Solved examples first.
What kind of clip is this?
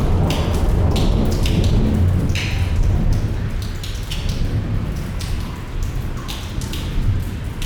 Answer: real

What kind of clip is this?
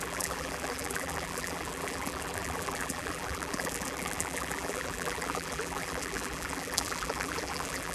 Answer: fake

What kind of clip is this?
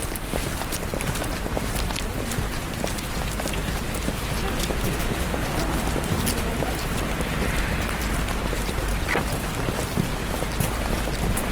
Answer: fake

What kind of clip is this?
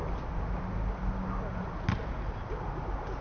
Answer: real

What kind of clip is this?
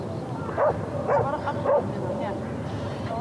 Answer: real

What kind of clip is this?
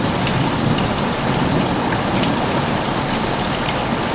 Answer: fake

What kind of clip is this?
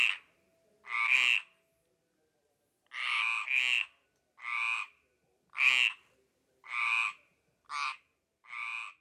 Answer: real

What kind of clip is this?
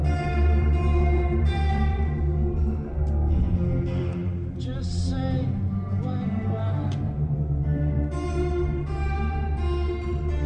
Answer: fake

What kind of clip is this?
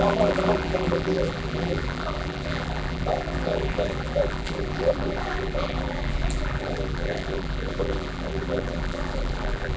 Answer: fake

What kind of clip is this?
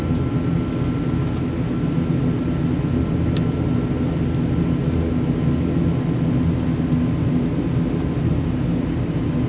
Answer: real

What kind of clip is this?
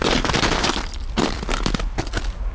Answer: real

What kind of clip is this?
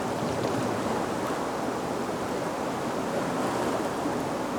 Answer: real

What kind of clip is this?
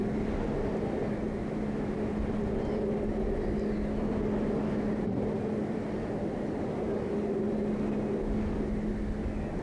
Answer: real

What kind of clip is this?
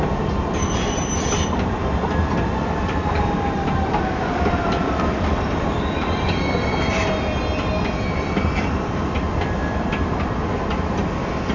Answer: real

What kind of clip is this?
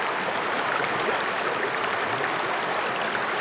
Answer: real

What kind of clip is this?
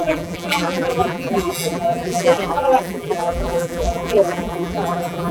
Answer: fake